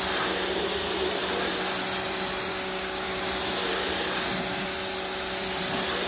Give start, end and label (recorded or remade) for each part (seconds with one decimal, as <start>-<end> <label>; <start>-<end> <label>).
0.0-2.5 recorded; 2.5-3.2 remade; 3.2-6.1 recorded